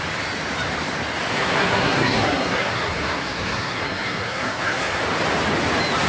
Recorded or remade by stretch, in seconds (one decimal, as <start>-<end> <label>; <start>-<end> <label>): 0.0-1.3 recorded; 1.3-5.0 remade; 5.0-6.1 recorded